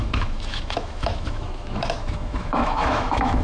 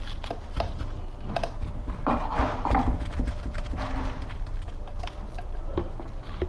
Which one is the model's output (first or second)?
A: first